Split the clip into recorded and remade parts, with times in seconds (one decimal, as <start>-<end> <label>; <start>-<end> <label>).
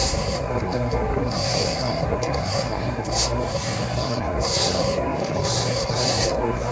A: 0.0-6.7 remade